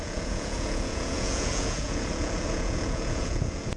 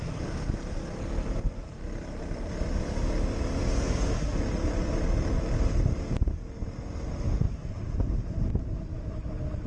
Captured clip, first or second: second